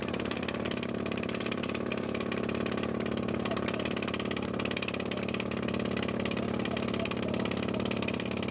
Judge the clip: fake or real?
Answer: real